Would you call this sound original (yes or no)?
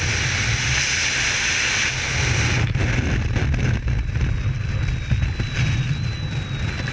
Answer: yes